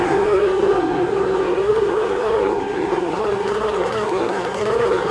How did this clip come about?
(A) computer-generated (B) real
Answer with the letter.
A